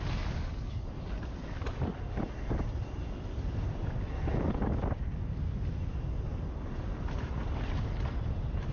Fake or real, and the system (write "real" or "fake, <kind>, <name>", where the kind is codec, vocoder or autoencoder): real